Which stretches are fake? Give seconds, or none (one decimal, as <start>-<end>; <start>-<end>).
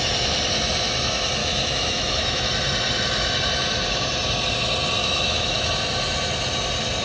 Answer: 1.4-2.4; 5.0-5.7